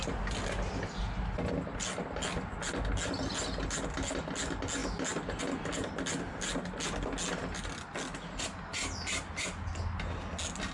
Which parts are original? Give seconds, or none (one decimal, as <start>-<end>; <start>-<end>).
0.0-10.7